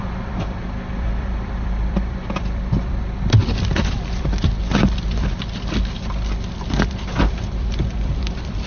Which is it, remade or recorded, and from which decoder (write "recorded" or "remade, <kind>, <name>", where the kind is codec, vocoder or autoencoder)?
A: remade, vocoder, BigVGAN v2